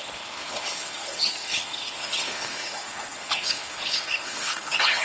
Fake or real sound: fake